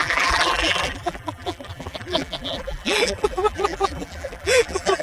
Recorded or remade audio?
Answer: remade